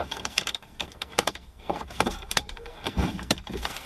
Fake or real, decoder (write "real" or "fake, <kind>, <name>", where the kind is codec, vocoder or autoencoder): fake, codec, SNAC